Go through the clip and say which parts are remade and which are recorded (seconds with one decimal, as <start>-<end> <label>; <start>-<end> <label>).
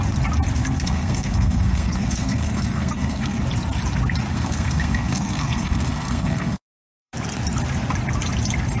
0.0-0.6 recorded; 0.6-3.4 remade; 3.4-4.3 recorded; 4.3-7.1 remade; 7.1-8.8 recorded